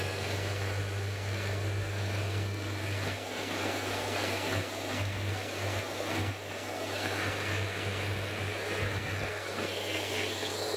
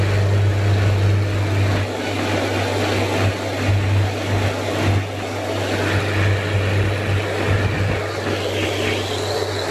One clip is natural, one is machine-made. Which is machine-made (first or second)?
first